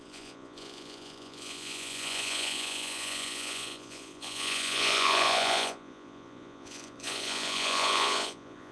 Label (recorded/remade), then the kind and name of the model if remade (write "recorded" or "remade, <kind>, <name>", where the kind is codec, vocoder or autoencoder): remade, vocoder, Vocos